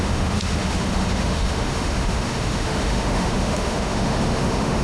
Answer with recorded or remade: remade